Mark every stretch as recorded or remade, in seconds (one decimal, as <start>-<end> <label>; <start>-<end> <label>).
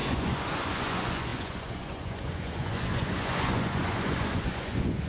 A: 0.0-5.1 remade